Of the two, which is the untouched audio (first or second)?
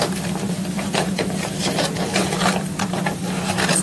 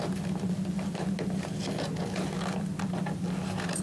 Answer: second